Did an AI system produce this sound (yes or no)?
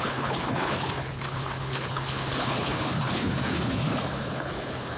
yes